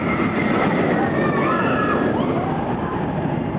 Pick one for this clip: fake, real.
real